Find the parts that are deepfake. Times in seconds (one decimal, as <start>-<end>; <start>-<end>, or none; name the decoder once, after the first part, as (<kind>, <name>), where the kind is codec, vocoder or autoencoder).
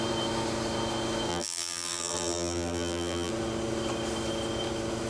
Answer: 1.3-3.3 (vocoder, BigVGAN v2)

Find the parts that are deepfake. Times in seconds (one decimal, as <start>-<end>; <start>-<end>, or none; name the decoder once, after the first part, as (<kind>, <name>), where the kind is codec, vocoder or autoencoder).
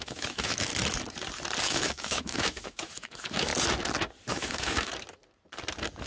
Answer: 0.0-0.7 (autoencoder, DAC-VAE); 1.6-3.5; 4.3-4.9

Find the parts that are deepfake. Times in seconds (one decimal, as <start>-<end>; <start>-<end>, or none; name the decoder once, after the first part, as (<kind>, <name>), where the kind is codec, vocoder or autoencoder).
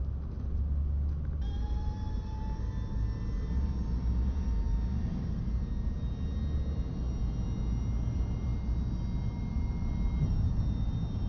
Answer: none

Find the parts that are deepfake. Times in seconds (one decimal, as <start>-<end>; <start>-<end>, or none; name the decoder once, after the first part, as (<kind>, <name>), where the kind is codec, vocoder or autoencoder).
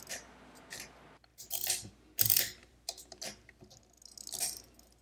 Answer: 1.3-1.9 (vocoder, BigVGAN v2); 2.6-3.1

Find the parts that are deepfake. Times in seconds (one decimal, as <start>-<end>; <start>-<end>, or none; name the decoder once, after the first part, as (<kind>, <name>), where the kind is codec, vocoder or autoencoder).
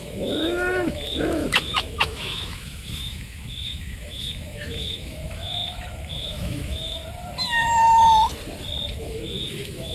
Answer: 0.0-7.0 (autoencoder, DAC-VAE); 9.0-9.9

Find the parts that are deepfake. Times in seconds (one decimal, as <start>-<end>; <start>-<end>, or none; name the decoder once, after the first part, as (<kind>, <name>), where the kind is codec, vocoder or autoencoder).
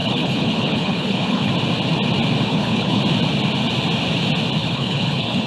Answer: 0.0-1.5 (codec, HILCodec); 2.5-3.0; 4.6-5.5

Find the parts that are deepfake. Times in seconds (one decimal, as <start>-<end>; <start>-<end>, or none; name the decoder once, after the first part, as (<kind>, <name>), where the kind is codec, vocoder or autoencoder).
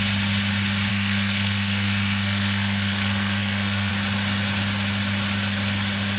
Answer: 0.9-3.9 (codec, SNAC)